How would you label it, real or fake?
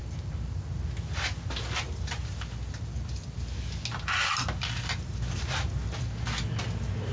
real